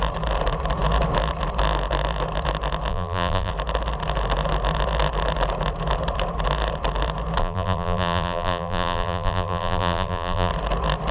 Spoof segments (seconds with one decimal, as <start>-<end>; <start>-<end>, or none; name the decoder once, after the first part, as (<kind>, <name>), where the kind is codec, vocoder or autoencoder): 2.9-3.5 (vocoder, BigVGAN v2); 7.4-10.5

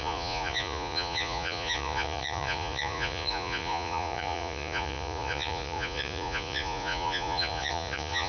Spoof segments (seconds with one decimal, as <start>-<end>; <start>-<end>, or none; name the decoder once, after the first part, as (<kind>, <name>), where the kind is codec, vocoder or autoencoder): 0.0-8.3 (vocoder, Vocos)

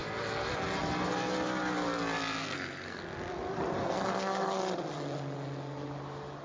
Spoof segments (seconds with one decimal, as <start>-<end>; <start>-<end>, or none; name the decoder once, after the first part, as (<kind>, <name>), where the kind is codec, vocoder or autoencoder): 2.4-3.0 (codec, SNAC); 3.8-4.6